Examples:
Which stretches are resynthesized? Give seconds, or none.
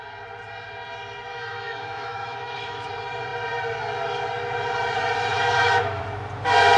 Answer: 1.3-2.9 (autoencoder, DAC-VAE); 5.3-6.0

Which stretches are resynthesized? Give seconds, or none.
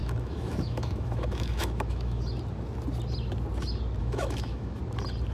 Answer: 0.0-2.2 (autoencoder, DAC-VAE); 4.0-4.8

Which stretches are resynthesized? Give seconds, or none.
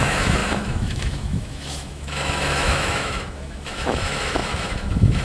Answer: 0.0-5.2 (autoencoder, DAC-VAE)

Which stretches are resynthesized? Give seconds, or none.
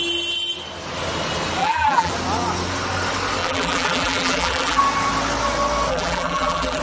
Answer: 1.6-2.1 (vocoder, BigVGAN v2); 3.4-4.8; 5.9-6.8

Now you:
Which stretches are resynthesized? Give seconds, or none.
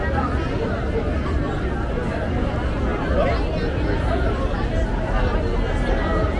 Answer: none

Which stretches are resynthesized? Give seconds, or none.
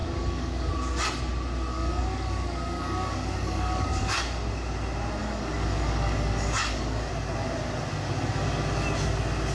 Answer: 0.0-0.7 (codec, DAC); 1.7-4.4; 5.2-7.1